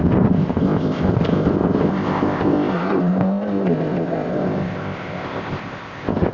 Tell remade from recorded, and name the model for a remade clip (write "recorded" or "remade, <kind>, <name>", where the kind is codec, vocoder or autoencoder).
remade, codec, ZipCodec